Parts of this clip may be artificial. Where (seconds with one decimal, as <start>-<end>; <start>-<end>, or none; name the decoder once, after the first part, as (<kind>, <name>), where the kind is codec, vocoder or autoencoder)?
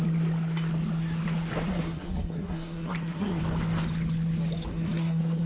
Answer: 1.7-3.4 (codec, SNAC); 4.7-5.5